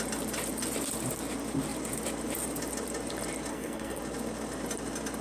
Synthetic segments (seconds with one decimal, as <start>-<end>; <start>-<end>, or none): 3.5-4.0